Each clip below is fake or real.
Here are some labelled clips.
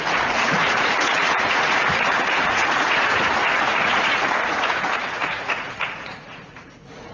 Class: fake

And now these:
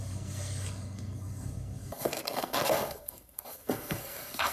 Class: fake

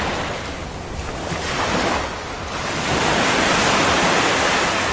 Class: real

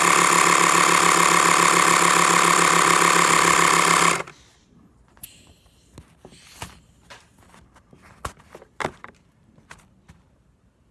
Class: real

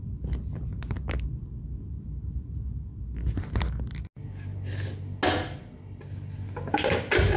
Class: real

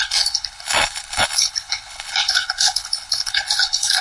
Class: fake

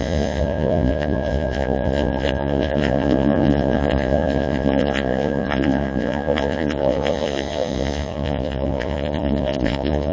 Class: fake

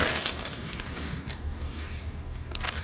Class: fake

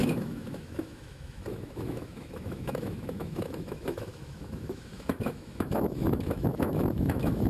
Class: fake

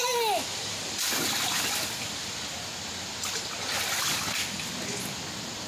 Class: real